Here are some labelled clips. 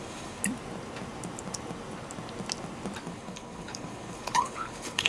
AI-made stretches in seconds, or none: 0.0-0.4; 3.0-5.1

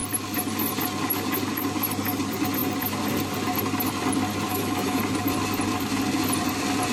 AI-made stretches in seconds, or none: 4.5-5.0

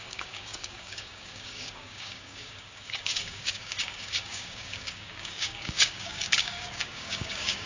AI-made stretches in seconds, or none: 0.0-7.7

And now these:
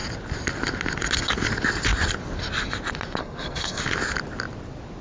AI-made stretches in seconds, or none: 3.2-3.8

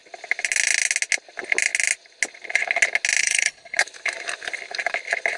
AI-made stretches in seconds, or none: 3.2-3.8